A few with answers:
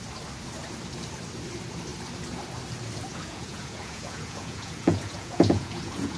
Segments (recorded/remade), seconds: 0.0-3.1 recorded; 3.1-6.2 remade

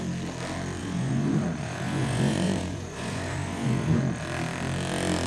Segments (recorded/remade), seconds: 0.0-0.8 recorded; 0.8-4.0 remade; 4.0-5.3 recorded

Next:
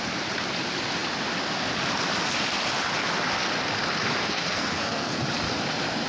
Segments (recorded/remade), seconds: 0.0-4.2 recorded; 4.2-5.2 remade; 5.2-6.1 recorded

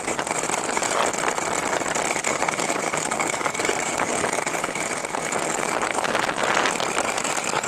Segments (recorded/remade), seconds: 0.0-1.0 remade; 1.0-2.1 recorded; 2.1-5.0 remade; 5.0-5.9 recorded; 5.9-7.7 remade

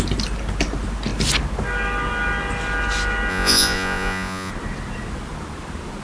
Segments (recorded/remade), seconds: 0.0-3.3 recorded; 3.3-4.5 remade; 4.5-6.0 recorded

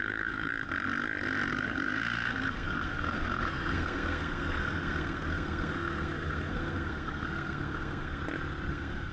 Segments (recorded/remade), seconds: 0.0-0.5 remade; 0.5-1.5 recorded; 1.5-8.2 remade; 8.2-8.7 recorded; 8.7-9.1 remade

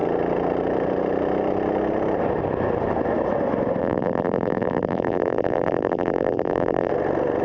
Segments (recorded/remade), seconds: 0.0-3.8 recorded; 3.8-6.9 remade; 6.9-7.4 recorded

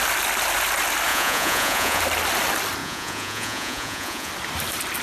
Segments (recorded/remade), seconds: 0.0-1.1 recorded; 1.1-2.0 remade; 2.0-2.8 recorded; 2.8-4.3 remade; 4.3-5.0 recorded